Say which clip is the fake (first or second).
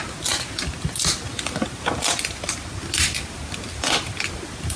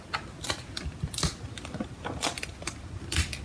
second